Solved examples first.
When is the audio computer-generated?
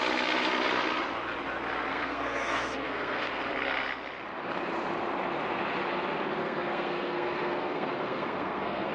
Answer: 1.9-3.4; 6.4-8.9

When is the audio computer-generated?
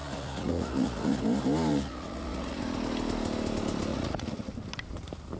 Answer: 0.0-1.2; 1.7-2.6; 3.9-4.5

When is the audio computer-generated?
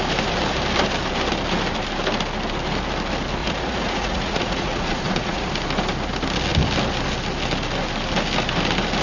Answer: 3.4-5.5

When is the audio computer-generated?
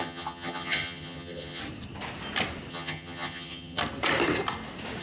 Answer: 0.0-1.6; 2.7-3.8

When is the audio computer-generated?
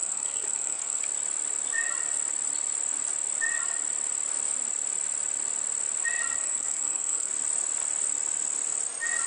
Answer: 0.0-1.0; 6.4-7.3